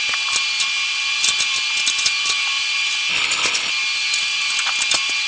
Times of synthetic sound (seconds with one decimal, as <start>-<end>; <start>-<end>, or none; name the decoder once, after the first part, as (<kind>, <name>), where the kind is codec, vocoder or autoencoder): 3.1-3.7 (codec, HILCodec)